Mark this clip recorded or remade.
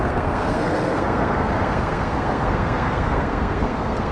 remade